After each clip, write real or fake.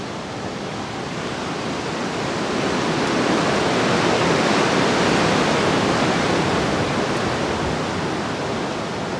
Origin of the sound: real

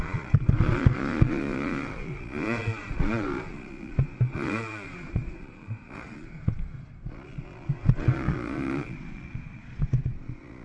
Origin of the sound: fake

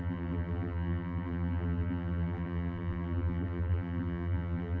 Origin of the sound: fake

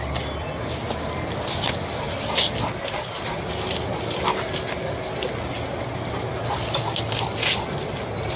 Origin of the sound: real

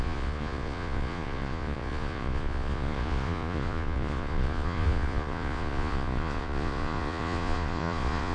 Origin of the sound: fake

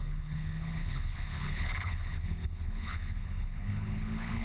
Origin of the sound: fake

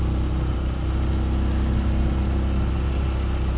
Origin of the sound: real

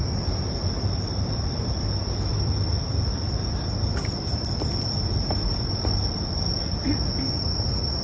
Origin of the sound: real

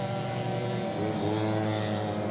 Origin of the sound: real